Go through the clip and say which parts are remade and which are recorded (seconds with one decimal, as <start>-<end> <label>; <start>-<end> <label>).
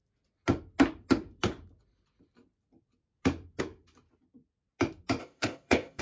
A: 0.0-5.2 recorded; 5.2-6.0 remade